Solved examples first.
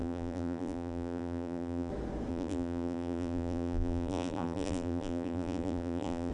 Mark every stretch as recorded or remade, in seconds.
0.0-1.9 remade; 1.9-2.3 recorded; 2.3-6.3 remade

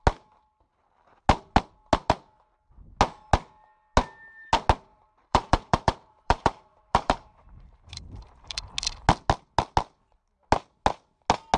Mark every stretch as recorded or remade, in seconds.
0.0-4.9 recorded; 4.9-8.7 remade; 8.7-11.6 recorded

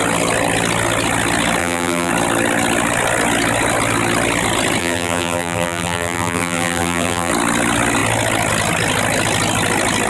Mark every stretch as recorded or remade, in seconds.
0.0-1.6 recorded; 1.6-2.1 remade; 2.1-4.8 recorded; 4.8-7.3 remade; 7.3-10.1 recorded

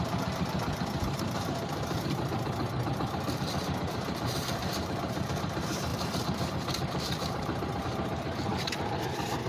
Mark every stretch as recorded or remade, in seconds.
0.0-9.5 remade